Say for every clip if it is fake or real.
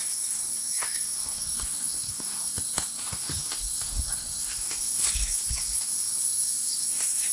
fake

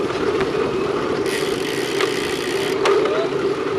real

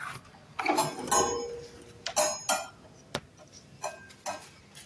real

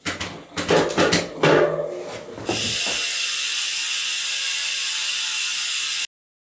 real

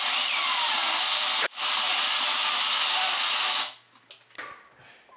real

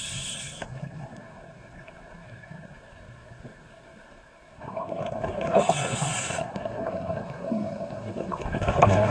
fake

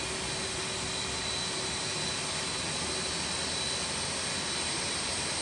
real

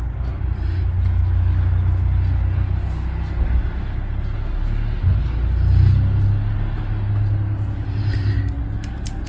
real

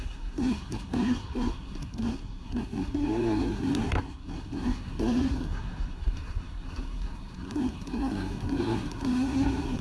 fake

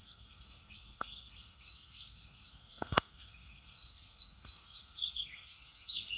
fake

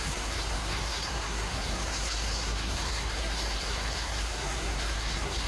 fake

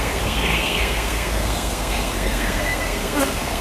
fake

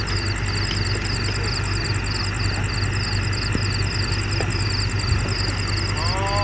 real